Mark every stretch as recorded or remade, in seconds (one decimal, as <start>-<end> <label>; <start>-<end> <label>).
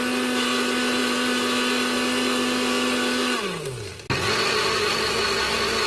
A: 0.0-5.9 recorded